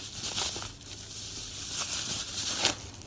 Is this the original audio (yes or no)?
yes